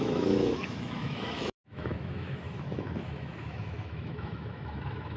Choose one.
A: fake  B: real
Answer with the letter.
A